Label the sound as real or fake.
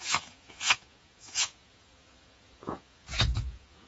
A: fake